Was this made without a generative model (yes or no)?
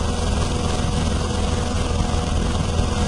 yes